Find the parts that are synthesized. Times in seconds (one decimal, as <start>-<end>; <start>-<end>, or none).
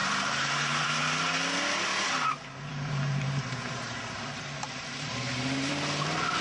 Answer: 0.0-1.0; 1.9-5.7